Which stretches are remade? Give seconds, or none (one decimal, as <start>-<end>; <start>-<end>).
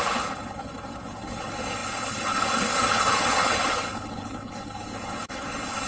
0.0-0.6; 1.2-5.9